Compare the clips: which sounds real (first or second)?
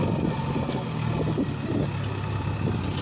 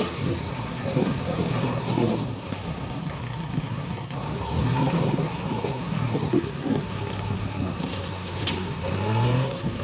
first